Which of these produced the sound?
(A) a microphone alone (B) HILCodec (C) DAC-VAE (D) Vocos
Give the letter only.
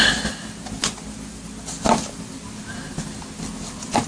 A